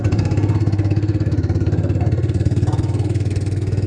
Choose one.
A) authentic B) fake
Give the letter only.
B